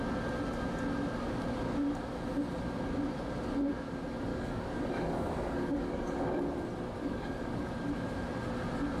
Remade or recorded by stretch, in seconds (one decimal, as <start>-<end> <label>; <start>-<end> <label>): 0.0-4.3 recorded; 4.3-6.4 remade; 6.4-7.0 recorded; 7.0-7.7 remade; 7.7-9.0 recorded